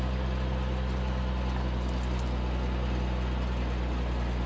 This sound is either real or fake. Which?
real